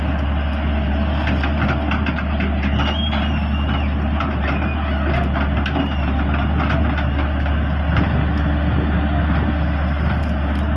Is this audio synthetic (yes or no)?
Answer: no